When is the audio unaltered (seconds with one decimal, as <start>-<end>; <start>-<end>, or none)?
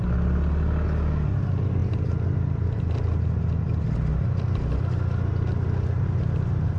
0.0-6.8